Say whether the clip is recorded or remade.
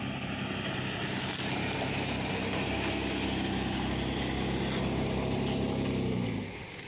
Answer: recorded